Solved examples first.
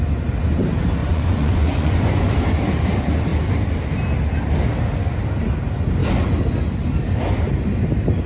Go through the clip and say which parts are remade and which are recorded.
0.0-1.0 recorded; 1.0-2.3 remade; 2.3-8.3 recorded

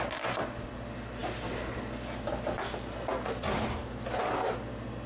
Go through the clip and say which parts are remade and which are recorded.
0.0-5.1 recorded

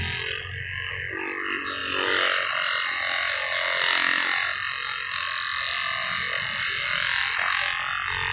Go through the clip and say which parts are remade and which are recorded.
0.0-1.8 recorded; 1.8-2.5 remade; 2.5-6.0 recorded; 6.0-7.2 remade; 7.2-8.3 recorded

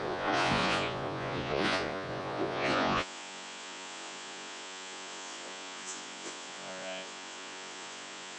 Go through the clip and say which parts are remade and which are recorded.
0.0-8.4 remade